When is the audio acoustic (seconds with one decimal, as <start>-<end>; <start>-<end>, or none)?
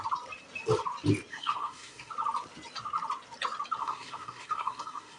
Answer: 0.0-1.3; 2.1-3.8